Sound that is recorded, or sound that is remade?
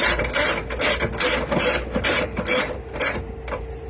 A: recorded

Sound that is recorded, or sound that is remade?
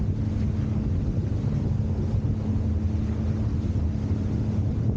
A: recorded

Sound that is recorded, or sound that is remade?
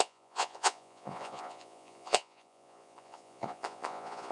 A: remade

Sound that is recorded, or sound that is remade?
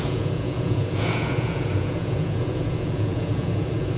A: remade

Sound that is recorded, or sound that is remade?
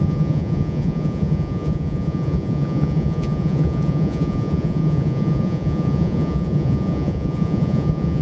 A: remade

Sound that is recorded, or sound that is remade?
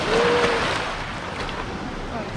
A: recorded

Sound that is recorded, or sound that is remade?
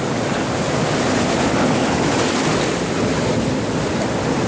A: recorded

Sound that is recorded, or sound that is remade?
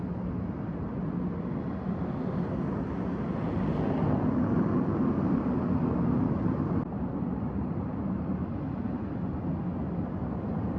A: recorded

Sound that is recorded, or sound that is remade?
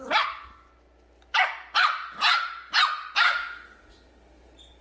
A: recorded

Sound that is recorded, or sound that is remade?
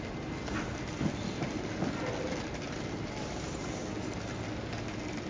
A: recorded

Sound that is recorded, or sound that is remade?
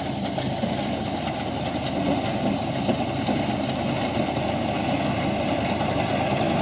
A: recorded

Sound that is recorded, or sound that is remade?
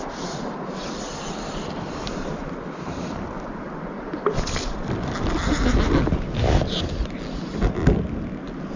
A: recorded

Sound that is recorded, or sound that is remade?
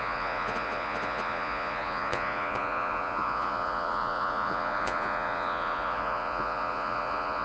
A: remade